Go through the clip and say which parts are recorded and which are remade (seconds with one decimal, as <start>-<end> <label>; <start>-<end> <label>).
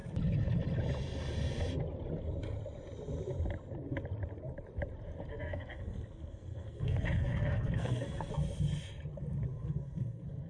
0.0-5.3 recorded; 5.3-8.3 remade; 8.3-9.5 recorded; 9.5-10.5 remade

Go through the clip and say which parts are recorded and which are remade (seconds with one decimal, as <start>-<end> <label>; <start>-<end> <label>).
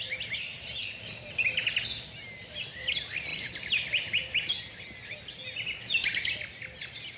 0.0-0.5 recorded; 0.5-1.4 remade; 1.4-3.3 recorded; 3.3-4.8 remade; 4.8-7.2 recorded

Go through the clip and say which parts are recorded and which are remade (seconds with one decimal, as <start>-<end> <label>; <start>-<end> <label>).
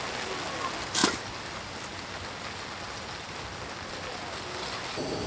0.0-5.3 recorded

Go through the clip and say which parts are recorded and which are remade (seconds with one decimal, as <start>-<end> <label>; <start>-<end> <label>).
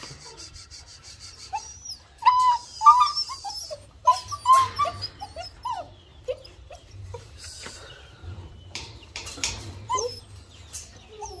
0.0-6.1 recorded; 6.1-10.2 remade; 10.2-11.4 recorded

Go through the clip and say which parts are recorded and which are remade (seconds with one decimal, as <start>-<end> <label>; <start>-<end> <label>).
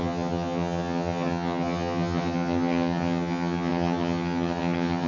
0.0-5.1 remade